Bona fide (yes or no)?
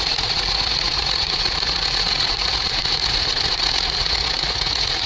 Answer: no